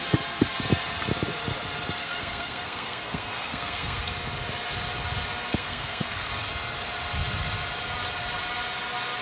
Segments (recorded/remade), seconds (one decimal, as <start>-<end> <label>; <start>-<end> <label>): 0.0-2.0 recorded; 2.0-4.0 remade; 4.0-5.5 recorded; 5.5-6.3 remade; 6.3-9.2 recorded